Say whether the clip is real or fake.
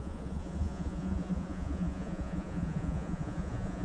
fake